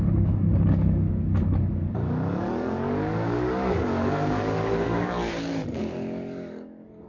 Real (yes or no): no